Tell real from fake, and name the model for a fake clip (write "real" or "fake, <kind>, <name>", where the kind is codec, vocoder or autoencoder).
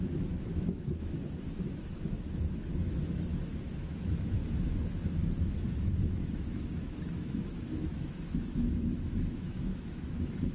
fake, autoencoder, DAC-VAE